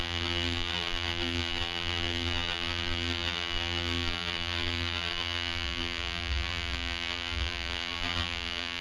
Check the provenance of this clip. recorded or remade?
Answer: remade